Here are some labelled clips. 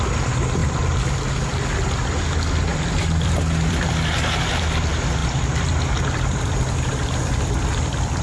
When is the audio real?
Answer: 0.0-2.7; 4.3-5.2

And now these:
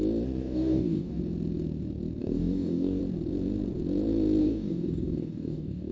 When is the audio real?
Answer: 0.0-0.4; 1.2-2.2; 3.0-4.4

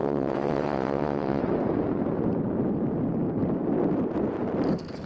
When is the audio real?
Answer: 1.4-5.1